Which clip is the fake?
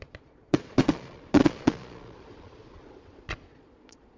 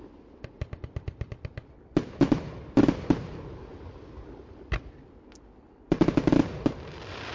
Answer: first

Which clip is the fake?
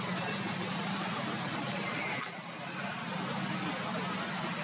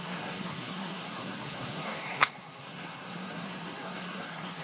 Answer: second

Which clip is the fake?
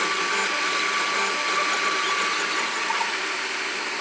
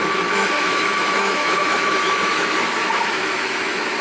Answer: second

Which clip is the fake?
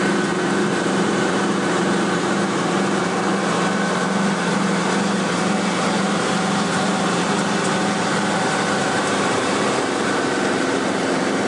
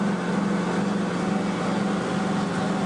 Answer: first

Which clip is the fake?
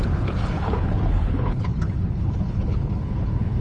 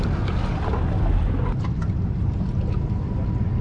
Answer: first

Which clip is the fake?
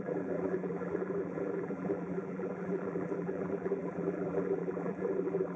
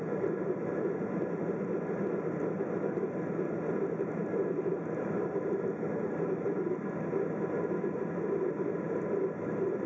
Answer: first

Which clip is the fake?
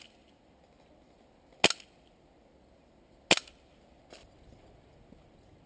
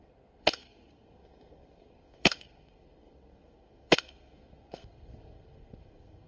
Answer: second